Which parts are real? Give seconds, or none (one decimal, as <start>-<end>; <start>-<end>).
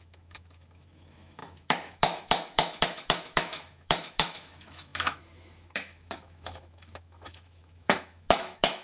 none